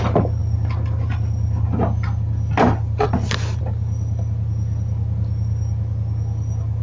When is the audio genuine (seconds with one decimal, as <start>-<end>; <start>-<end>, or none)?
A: 0.0-6.8